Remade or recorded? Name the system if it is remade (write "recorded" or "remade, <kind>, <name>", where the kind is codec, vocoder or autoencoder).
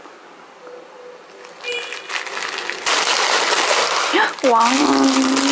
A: recorded